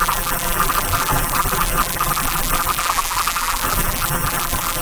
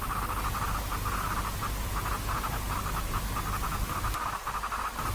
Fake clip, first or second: first